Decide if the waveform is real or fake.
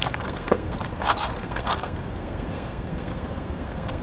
fake